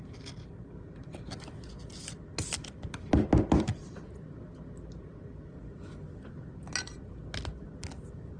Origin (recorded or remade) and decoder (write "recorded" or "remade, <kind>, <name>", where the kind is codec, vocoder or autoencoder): recorded